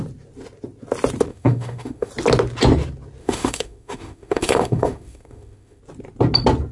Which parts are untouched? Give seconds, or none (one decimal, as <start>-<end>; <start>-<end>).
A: 0.0-1.3; 2.1-3.2; 5.8-6.7